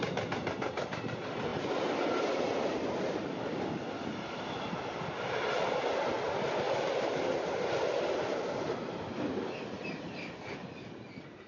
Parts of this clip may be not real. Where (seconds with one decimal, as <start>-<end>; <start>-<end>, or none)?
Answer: none